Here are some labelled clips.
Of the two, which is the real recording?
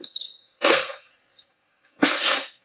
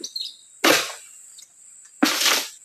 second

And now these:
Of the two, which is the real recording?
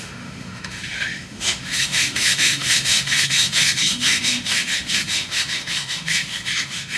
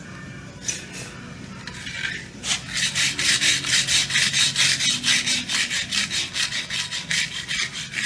second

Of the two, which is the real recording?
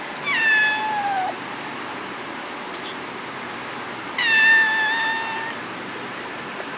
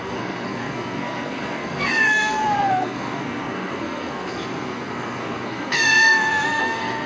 first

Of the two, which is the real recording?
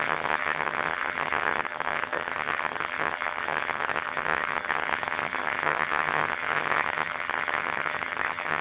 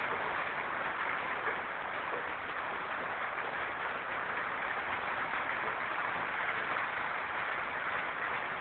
second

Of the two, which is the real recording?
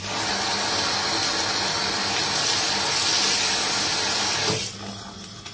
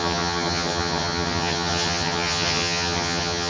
first